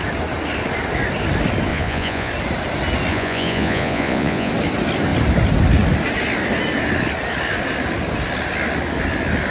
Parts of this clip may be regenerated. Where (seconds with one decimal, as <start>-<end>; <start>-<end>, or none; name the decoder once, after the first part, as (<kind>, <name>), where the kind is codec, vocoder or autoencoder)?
1.7-2.3 (vocoder, Vocos); 3.1-4.5